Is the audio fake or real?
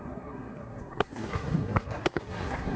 fake